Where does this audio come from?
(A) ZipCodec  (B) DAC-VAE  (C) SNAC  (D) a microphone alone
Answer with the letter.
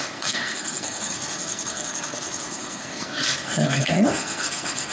C